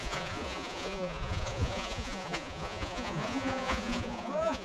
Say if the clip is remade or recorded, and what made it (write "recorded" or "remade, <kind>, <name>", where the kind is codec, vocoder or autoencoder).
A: remade, vocoder, Vocos